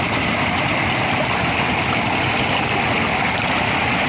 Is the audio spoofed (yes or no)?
no